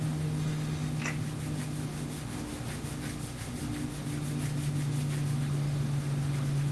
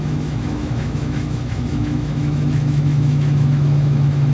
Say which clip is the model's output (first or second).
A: second